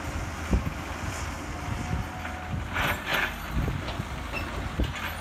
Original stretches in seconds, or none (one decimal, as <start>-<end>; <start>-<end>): 0.0-5.2